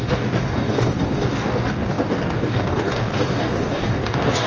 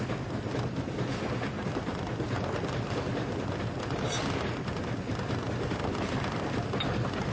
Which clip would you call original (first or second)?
second